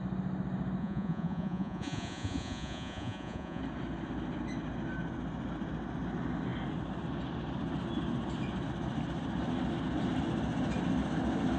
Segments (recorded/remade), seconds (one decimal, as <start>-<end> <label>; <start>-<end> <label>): 0.0-0.8 recorded; 0.8-3.6 remade; 3.6-11.6 recorded